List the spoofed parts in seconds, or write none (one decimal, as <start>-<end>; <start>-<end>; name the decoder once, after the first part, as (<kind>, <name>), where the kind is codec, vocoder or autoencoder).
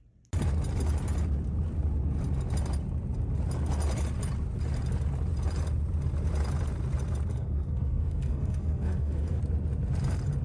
7.3-9.4 (codec, SNAC)